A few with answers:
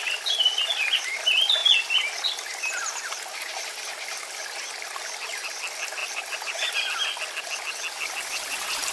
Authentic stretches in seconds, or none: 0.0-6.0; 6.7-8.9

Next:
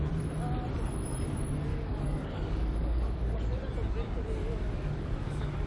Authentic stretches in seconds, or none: 0.0-1.7; 3.4-4.4

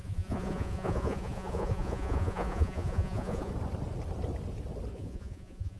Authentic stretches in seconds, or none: 3.5-4.9

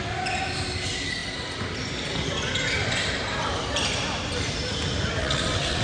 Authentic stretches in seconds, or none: 0.0-5.2

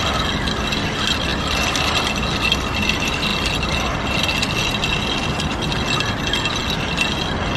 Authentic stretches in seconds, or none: 0.0-7.6